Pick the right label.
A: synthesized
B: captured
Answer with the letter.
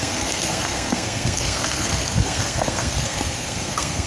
A